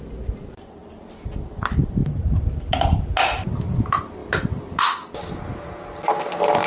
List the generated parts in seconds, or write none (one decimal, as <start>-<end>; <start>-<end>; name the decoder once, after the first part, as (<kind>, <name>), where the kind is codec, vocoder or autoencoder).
none